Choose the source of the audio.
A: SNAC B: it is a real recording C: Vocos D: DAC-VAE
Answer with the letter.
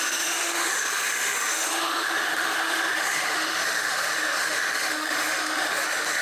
D